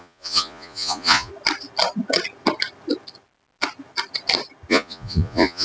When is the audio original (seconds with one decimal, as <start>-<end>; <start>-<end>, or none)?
1.3-4.7